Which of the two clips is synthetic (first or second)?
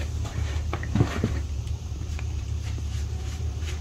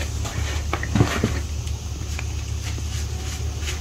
first